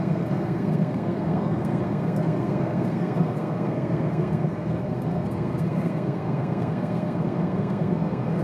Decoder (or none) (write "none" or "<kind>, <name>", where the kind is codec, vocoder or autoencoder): codec, SNAC